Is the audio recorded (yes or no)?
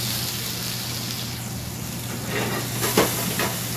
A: yes